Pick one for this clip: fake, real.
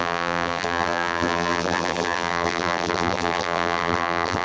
fake